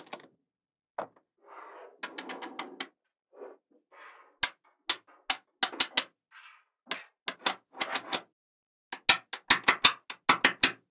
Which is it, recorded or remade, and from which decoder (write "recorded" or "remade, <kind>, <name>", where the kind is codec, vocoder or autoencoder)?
recorded